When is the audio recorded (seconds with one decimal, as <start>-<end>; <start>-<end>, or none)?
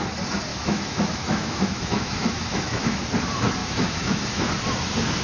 0.0-0.5; 3.1-3.6; 4.5-5.2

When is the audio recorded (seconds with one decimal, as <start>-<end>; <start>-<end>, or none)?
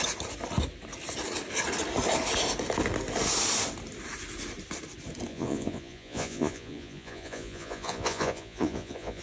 0.0-5.3